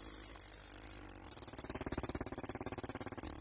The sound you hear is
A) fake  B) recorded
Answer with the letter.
B